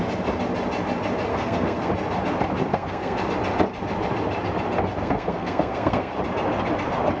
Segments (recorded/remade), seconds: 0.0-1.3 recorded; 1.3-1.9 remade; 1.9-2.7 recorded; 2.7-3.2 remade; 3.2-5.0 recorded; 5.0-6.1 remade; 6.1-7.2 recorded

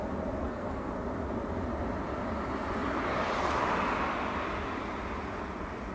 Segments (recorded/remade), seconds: 0.0-0.4 recorded; 0.4-0.9 remade; 0.9-5.9 recorded

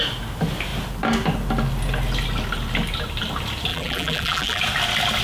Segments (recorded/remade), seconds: 0.0-3.7 recorded; 3.7-4.6 remade; 4.6-5.2 recorded